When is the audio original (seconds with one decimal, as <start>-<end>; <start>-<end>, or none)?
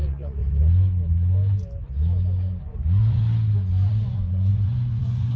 0.4-2.6; 3.2-3.9